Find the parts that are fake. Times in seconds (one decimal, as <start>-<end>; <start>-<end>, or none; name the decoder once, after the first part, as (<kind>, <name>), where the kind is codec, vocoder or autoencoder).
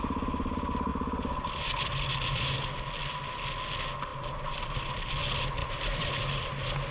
0.9-2.8 (vocoder, BigVGAN v2); 5.6-6.5